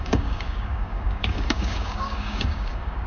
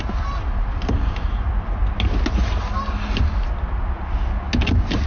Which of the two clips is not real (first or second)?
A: first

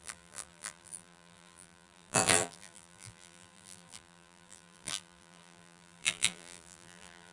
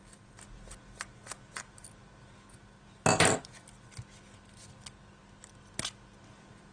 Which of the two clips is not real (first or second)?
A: first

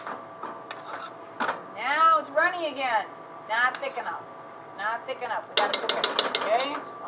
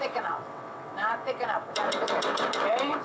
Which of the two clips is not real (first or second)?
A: second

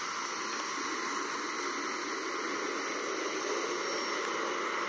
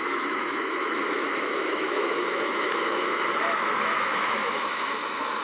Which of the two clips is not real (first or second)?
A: second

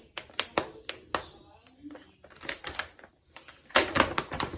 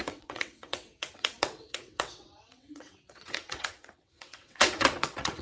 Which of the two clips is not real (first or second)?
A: second